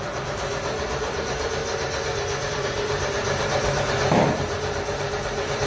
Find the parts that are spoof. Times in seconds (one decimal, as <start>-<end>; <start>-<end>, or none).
0.0-1.6; 2.5-5.7